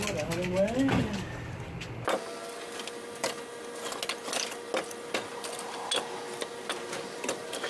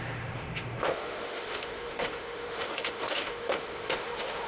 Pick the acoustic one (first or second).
first